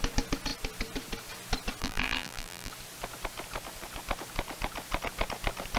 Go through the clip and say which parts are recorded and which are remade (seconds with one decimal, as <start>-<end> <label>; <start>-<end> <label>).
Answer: 0.0-1.8 recorded; 1.8-2.7 remade; 2.7-5.8 recorded